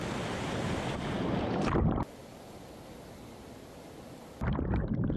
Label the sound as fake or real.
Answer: real